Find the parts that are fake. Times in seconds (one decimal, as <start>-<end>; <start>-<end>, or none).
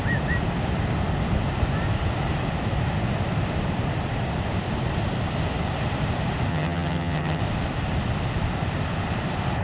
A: 6.5-7.4